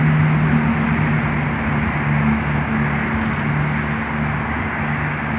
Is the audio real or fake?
real